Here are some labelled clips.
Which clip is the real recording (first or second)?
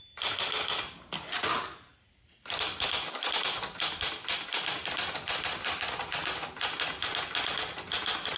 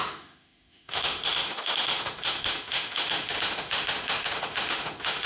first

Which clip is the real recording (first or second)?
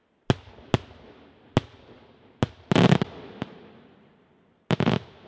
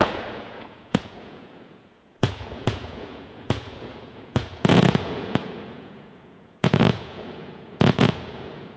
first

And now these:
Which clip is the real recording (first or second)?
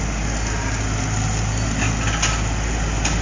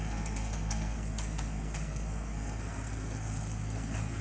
first